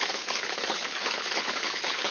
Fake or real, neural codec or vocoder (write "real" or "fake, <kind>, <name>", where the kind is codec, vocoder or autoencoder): fake, codec, HILCodec